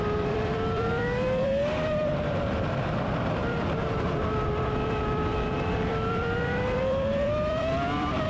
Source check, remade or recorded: remade